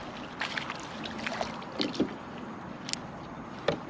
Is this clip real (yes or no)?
yes